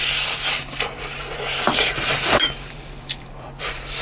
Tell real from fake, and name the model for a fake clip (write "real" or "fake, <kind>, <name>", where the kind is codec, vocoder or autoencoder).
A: fake, vocoder, BigVGAN v2